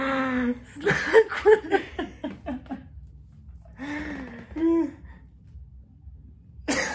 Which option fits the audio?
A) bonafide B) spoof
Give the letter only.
A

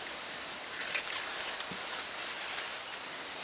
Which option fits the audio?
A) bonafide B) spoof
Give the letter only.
B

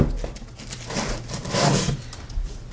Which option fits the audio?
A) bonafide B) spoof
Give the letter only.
A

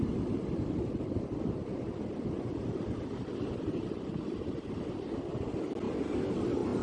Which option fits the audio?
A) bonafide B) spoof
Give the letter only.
A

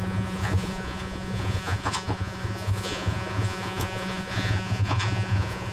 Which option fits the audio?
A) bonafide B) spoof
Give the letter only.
B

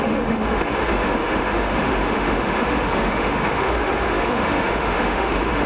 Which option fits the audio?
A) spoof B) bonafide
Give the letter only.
A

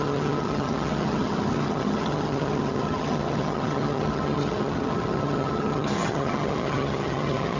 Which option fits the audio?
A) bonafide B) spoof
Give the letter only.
B